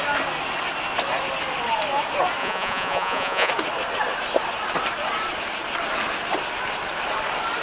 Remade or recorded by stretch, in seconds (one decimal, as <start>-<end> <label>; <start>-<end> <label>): 0.0-2.4 recorded; 2.4-3.5 remade; 3.5-7.6 recorded